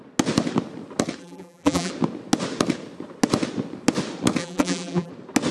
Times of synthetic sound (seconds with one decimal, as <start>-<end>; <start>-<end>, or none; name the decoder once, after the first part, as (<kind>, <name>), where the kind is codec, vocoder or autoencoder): 1.2-1.9 (vocoder, BigVGAN v2); 4.4-5.1